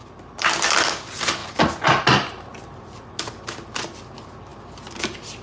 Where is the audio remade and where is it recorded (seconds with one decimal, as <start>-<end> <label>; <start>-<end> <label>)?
0.0-5.4 recorded